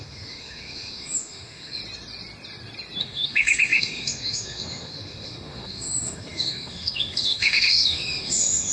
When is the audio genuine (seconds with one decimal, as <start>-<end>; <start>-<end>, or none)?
1.8-3.0